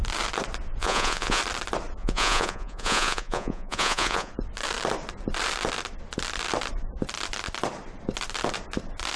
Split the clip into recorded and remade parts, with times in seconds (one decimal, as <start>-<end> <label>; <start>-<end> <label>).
0.0-0.8 recorded; 0.8-1.4 remade; 1.4-2.0 recorded; 2.0-4.3 remade; 4.3-9.2 recorded